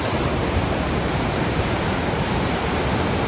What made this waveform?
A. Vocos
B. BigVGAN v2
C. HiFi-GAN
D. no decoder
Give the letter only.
B